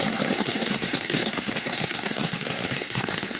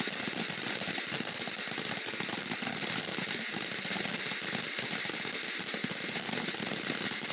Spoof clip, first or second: first